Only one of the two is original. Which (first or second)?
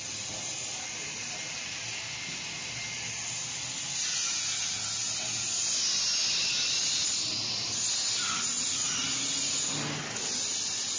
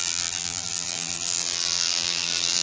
first